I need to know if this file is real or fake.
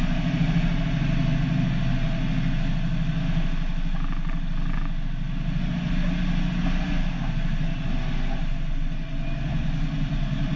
real